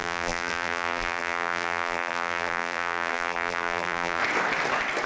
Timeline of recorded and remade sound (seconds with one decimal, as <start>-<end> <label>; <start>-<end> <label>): 0.0-4.2 remade; 4.2-5.1 recorded